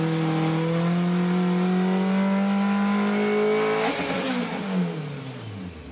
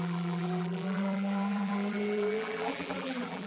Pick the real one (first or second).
first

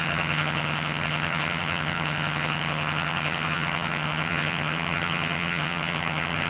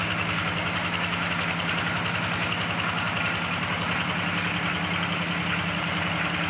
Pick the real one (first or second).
second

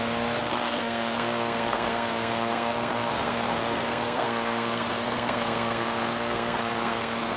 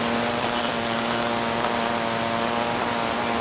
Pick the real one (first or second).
second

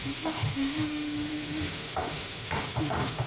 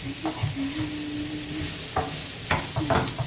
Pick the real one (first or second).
second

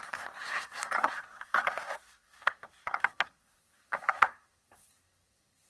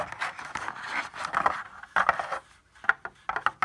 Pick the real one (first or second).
second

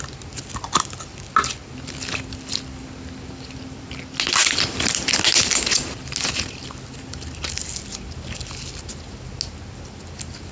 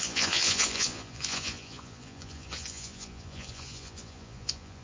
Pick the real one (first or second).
first